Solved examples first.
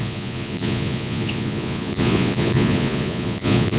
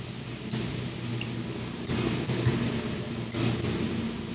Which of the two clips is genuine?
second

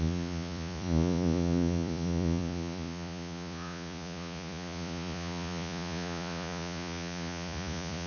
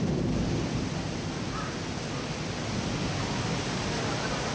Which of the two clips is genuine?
second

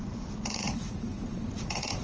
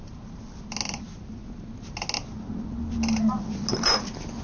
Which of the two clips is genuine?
second